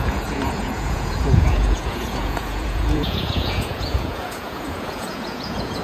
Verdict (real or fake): fake